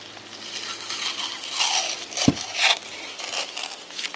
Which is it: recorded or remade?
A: recorded